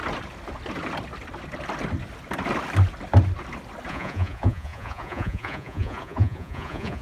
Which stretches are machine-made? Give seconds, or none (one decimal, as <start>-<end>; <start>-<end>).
3.9-7.0